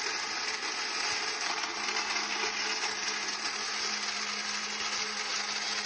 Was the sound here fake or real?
real